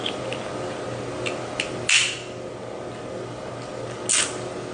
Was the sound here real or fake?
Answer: real